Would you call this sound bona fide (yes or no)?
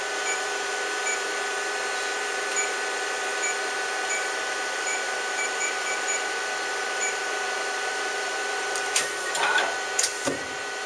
no